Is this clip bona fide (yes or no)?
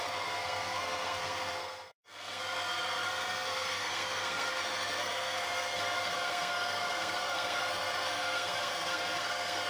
no